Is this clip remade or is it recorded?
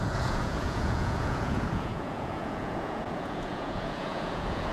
remade